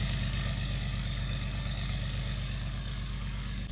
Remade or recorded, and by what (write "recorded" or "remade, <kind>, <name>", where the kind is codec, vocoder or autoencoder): remade, codec, DAC